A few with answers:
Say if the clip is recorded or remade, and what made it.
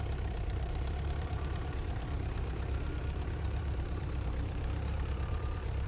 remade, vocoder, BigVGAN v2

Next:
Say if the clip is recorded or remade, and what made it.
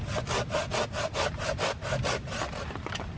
recorded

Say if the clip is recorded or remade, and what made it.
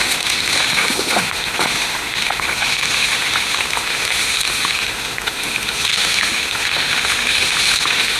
remade, autoencoder, DAC-VAE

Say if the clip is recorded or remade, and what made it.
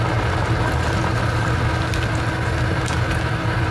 recorded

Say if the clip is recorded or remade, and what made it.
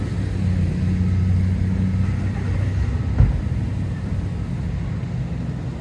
recorded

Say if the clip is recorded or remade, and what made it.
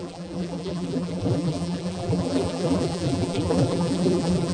remade, vocoder, BigVGAN v2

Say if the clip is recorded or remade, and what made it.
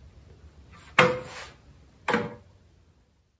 recorded